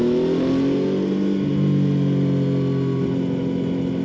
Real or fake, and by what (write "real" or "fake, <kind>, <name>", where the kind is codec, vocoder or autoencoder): real